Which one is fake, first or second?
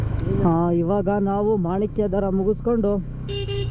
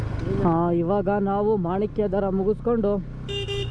first